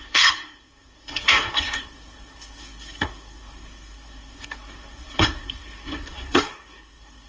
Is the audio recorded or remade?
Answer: remade